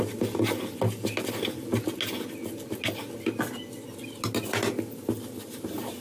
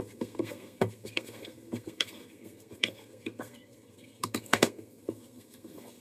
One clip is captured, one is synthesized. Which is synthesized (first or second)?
second